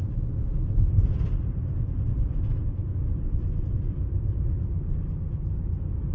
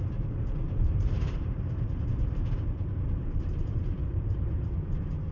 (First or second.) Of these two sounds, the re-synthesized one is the second